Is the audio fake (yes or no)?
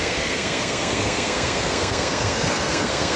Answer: yes